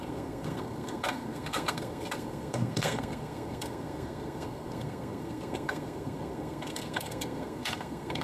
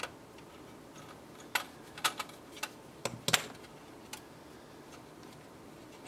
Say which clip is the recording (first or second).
second